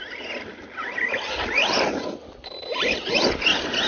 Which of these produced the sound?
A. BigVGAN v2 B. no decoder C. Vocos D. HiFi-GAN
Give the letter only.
B